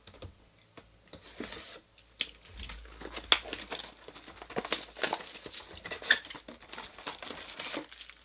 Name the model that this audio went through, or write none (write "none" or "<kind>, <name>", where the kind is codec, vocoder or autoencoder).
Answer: none